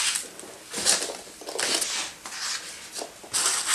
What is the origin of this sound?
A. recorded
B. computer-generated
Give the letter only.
A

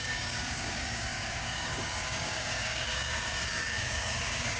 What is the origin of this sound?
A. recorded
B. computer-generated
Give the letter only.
B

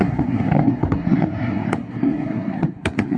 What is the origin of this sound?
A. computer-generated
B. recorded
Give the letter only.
A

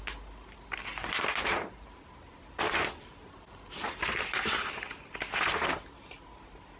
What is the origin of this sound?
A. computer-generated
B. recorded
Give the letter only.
B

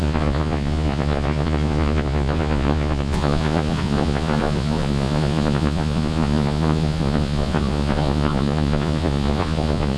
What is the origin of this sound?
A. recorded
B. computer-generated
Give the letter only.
B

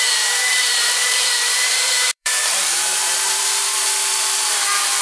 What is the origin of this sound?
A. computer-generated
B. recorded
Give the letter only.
A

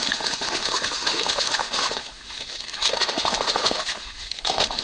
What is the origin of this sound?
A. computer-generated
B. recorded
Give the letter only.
A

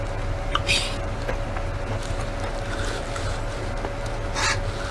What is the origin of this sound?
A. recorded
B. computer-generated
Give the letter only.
A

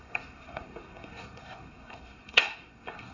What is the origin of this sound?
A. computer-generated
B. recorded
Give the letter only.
A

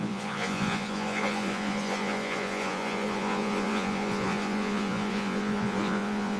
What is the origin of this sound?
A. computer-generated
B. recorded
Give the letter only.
A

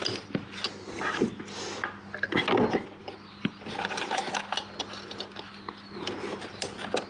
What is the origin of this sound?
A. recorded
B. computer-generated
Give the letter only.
A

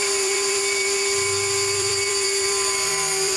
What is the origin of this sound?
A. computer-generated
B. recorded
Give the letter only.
A